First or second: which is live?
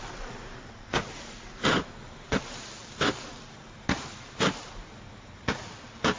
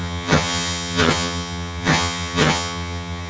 first